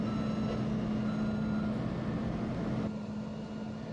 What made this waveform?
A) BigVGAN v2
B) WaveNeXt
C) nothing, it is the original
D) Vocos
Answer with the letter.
C